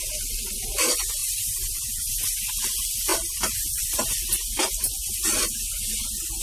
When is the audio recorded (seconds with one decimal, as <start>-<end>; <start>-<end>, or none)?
0.0-1.2; 2.1-3.1; 5.1-6.4